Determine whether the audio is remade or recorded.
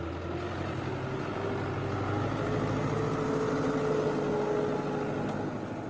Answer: recorded